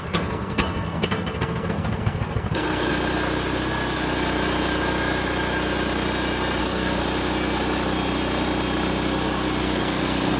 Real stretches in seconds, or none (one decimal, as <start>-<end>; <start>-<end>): 2.9-6.6; 7.0-9.6